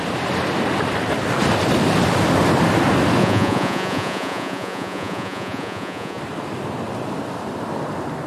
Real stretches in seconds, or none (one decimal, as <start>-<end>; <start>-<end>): 0.0-3.2; 6.2-8.3